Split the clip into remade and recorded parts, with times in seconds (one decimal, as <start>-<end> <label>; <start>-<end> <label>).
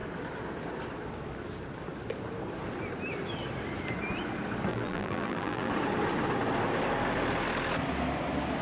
0.0-4.7 recorded; 4.7-5.7 remade; 5.7-8.6 recorded